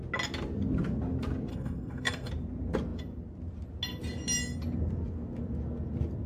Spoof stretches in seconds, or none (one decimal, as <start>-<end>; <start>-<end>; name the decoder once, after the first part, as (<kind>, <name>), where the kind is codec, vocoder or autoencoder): 1.5-2.3 (codec, SNAC)